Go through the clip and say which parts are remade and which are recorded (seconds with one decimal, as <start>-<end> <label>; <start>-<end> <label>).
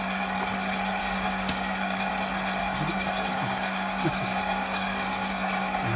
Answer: 0.0-1.0 recorded; 1.0-2.1 remade; 2.1-2.6 recorded; 2.6-6.0 remade